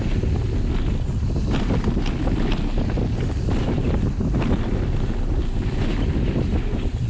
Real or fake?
real